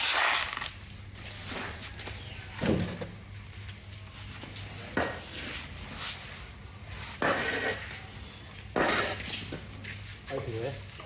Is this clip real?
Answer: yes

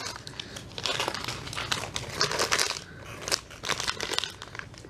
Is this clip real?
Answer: yes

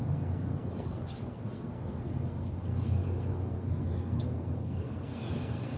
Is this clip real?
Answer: no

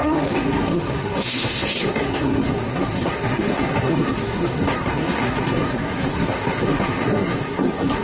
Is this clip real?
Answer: no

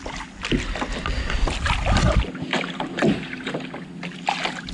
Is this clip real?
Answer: yes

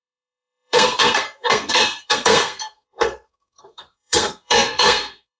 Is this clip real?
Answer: no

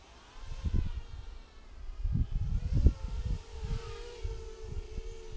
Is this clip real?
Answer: yes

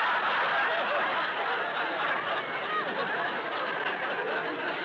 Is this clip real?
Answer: yes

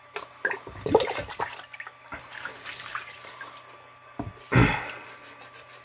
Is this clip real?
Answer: yes